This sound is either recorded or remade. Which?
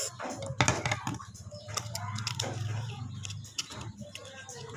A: recorded